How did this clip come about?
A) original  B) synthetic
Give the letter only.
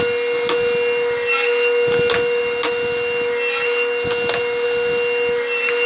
A